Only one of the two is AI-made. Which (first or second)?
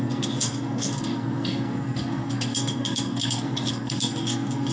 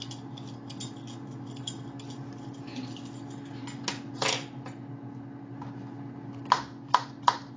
first